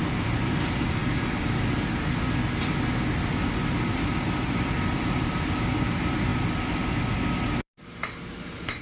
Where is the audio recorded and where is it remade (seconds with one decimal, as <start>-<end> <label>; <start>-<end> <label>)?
0.0-1.0 remade; 1.0-3.7 recorded; 3.7-6.3 remade; 6.3-7.4 recorded; 7.4-8.8 remade